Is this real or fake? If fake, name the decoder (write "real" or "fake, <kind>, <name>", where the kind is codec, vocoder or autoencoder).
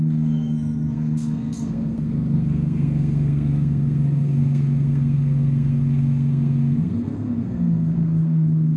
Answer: fake, codec, SNAC